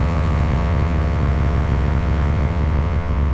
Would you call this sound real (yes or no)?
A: no